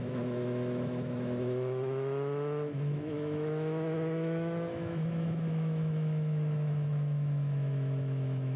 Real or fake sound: fake